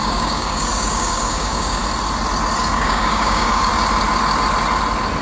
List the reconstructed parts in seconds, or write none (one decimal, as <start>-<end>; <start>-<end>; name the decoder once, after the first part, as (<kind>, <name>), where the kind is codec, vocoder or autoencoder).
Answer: 0.0-1.8 (codec, DAC); 2.6-3.7